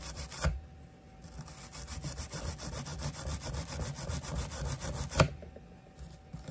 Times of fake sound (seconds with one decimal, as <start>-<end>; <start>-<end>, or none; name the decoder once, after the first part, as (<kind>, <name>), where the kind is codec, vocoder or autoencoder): none